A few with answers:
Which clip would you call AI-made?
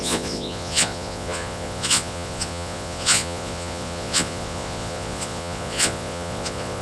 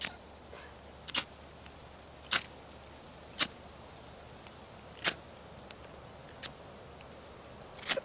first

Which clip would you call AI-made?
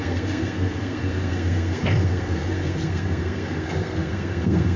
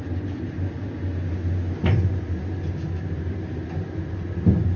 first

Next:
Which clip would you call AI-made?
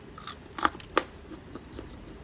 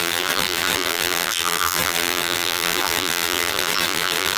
second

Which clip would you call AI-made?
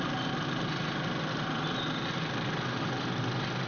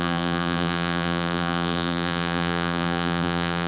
second